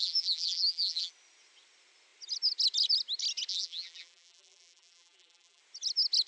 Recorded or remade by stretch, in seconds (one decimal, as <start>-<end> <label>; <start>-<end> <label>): 0.0-1.1 remade; 1.1-3.5 recorded; 3.5-5.6 remade; 5.6-6.3 recorded